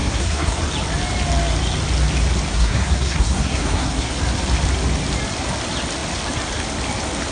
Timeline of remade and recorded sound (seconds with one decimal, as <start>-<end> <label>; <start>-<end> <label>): 0.0-0.6 remade; 0.6-2.5 recorded; 2.5-4.1 remade; 4.1-7.3 recorded